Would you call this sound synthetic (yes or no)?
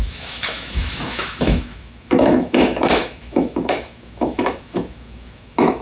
yes